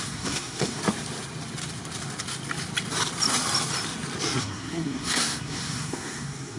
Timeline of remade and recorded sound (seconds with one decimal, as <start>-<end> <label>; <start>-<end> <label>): 0.0-0.8 remade; 0.8-4.4 recorded; 4.4-6.6 remade